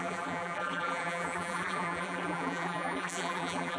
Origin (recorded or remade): remade